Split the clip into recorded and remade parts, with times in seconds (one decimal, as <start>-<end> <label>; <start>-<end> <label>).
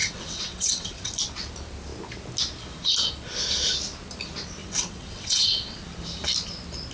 0.0-1.1 remade; 1.1-4.6 recorded; 4.6-5.8 remade; 5.8-6.9 recorded